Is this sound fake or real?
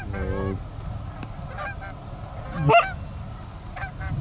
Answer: real